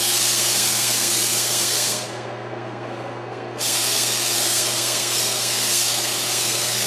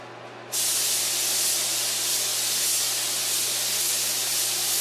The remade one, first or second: first